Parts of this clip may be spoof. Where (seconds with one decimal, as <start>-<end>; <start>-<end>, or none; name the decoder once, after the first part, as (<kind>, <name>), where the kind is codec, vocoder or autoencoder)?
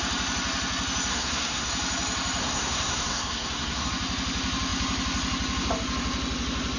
1.1-1.7 (codec, SNAC); 2.4-3.9